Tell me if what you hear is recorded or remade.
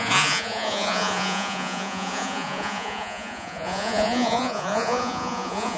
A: remade